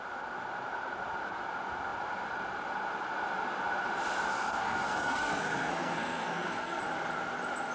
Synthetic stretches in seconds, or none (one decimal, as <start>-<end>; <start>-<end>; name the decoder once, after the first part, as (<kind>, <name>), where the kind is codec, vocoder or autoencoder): 4.3-6.8 (codec, SNAC)